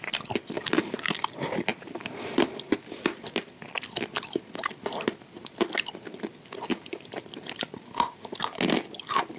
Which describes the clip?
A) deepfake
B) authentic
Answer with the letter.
B